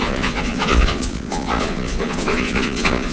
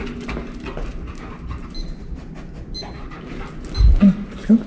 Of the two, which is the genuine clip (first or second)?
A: second